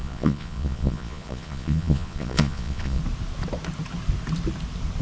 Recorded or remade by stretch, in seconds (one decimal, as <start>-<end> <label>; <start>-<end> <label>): 0.0-3.0 remade; 3.0-5.0 recorded